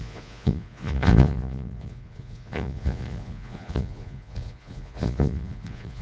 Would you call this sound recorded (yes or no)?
no